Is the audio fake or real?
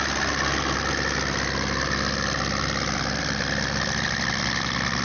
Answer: fake